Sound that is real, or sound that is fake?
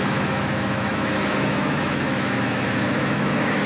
fake